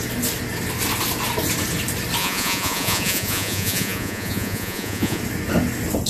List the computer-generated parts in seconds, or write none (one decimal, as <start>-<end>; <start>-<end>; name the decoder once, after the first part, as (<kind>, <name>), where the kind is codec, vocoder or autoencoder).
2.2-5.2 (vocoder, Vocos)